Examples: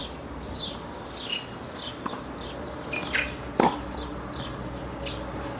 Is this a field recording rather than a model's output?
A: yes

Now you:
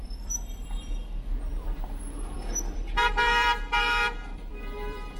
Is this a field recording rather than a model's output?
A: no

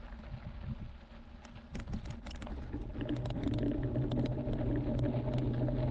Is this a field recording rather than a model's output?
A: yes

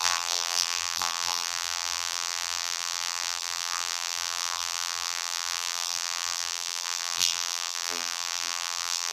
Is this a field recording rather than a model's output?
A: no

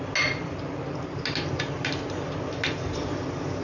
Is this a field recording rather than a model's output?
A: yes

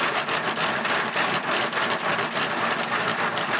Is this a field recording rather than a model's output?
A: yes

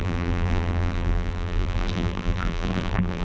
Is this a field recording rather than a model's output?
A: no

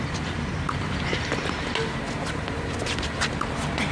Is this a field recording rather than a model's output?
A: yes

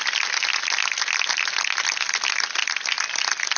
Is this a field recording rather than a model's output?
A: yes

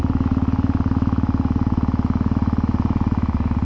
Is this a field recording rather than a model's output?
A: yes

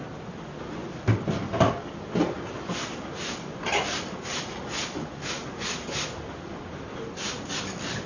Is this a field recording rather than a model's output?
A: yes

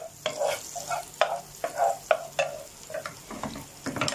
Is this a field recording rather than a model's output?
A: yes